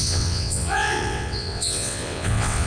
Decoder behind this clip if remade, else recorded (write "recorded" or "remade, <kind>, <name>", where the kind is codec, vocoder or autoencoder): remade, vocoder, WaveNeXt